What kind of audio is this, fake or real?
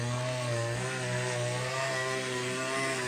fake